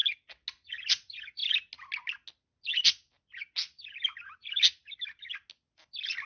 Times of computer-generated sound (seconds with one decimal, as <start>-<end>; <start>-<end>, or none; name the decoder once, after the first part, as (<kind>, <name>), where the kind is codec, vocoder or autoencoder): none